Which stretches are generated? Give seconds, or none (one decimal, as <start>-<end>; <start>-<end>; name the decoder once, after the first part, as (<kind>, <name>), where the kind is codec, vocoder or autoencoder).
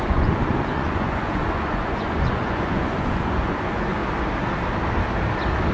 0.0-4.0 (vocoder, Vocos)